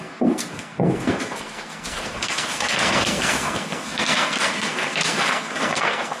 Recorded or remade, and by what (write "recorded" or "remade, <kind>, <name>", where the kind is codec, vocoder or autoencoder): remade, codec, SNAC